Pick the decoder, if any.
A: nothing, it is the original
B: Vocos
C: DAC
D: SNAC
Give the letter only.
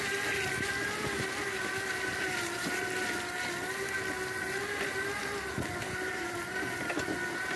A